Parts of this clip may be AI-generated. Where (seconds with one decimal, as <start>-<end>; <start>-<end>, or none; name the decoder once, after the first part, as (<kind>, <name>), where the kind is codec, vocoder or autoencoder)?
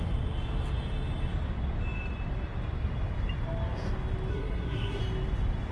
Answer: 4.3-5.0 (codec, SNAC)